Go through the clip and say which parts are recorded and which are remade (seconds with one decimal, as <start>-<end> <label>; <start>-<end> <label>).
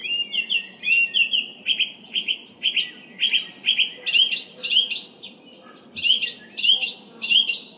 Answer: 0.0-2.0 recorded; 2.0-2.4 remade; 2.4-6.6 recorded; 6.6-7.8 remade